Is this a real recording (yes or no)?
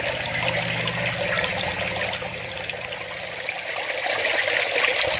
yes